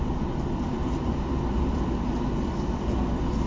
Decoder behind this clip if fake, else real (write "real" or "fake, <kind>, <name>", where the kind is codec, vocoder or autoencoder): real